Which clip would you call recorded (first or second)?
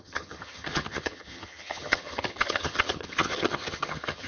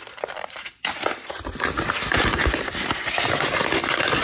second